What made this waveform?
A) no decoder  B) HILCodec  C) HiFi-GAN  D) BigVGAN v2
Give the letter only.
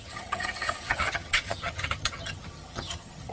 C